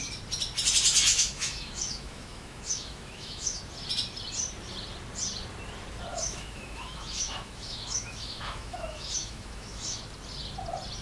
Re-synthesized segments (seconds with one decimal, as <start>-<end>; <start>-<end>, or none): 1.1-3.6; 6.1-10.0